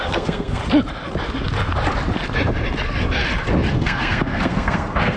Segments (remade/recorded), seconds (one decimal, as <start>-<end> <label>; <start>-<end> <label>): 0.0-0.6 remade; 0.6-3.7 recorded; 3.7-5.2 remade